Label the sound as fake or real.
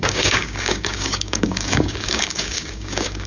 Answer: fake